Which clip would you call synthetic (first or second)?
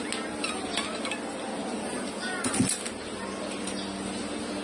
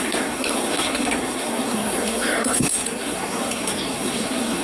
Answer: second